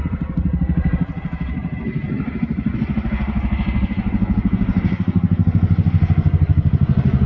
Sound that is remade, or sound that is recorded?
recorded